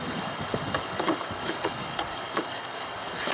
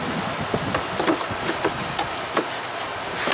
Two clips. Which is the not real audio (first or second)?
first